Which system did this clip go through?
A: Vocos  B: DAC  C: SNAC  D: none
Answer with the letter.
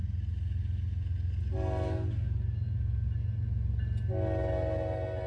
D